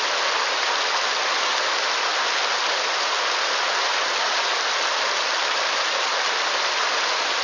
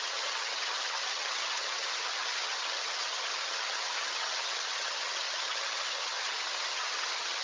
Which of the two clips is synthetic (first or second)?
second